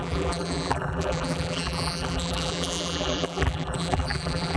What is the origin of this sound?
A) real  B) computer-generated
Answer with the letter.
B